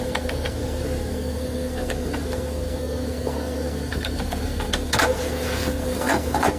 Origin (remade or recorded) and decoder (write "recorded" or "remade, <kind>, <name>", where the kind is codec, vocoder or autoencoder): remade, codec, SNAC